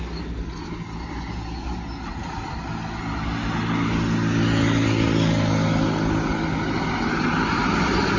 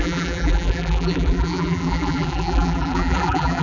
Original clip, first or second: first